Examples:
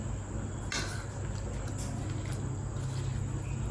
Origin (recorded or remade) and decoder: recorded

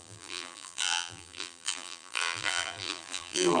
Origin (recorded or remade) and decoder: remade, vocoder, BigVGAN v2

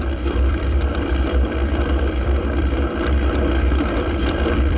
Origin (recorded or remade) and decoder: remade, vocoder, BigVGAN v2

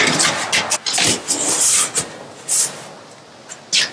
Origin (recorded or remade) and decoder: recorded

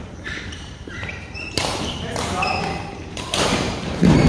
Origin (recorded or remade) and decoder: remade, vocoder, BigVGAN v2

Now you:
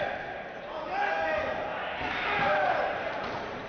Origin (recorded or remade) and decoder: recorded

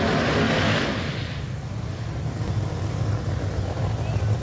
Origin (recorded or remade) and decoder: recorded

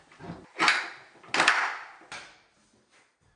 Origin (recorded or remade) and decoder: recorded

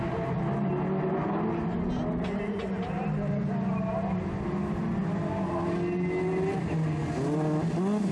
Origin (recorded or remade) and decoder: recorded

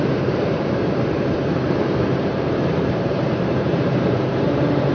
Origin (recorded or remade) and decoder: remade, vocoder, BigVGAN v2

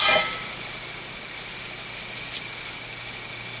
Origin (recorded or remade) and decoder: recorded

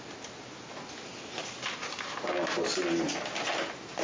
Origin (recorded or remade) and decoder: recorded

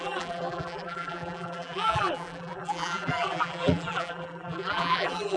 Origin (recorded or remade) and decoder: remade, vocoder, BigVGAN v2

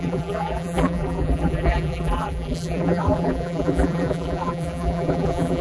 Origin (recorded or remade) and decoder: remade, vocoder, BigVGAN v2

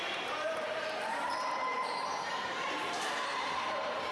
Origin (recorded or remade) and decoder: remade, vocoder, BigVGAN v2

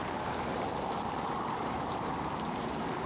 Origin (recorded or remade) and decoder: remade, vocoder, BigVGAN v2